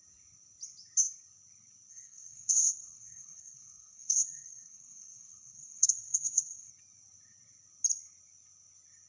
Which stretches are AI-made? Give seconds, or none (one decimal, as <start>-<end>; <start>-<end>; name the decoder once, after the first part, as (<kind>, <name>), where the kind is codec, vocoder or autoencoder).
1.9-6.7 (codec, SNAC)